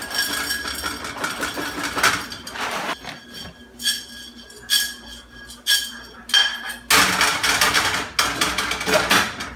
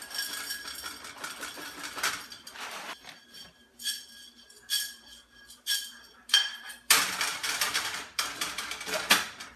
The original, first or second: first